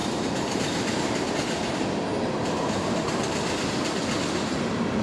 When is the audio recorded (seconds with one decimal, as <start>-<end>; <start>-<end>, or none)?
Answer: 1.3-5.0